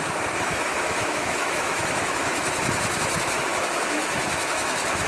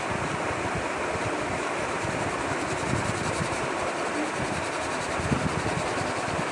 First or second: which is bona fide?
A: second